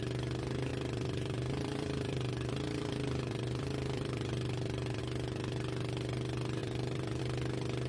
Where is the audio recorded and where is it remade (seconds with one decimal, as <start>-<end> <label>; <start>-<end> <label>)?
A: 0.0-0.7 recorded; 0.7-5.0 remade; 5.0-6.6 recorded; 6.6-7.2 remade; 7.2-7.9 recorded